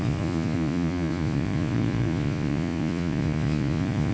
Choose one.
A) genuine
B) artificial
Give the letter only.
B